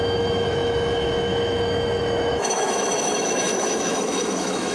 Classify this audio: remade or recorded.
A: remade